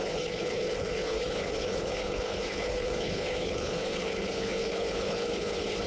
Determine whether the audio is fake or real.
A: fake